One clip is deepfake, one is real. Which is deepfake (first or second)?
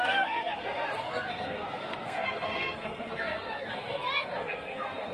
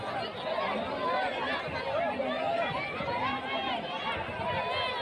first